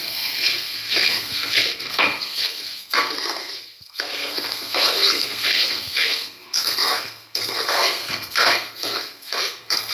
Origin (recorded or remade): remade